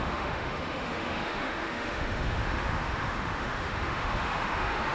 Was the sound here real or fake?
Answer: fake